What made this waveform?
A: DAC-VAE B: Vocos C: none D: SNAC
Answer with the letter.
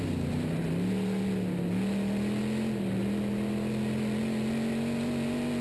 C